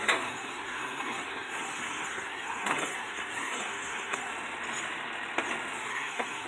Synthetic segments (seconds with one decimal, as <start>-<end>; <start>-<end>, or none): 0.0-4.3; 5.9-6.5

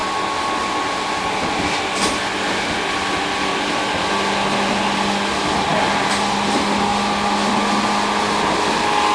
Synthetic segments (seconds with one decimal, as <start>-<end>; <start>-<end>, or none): none

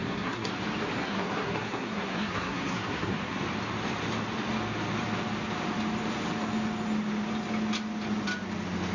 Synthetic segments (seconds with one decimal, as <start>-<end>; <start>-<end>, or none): 0.0-0.5; 1.0-3.4